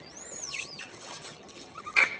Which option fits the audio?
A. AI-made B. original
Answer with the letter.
A